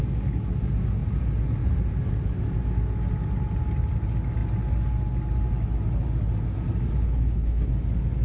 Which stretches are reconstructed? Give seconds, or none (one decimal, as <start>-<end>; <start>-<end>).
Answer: 7.0-7.7